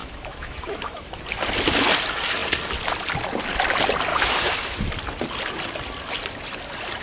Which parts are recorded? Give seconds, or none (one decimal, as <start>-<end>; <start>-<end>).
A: 1.2-4.1; 4.8-7.0